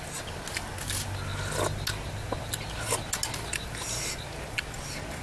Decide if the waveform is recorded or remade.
recorded